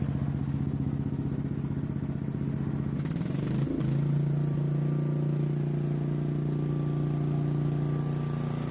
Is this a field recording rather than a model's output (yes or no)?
yes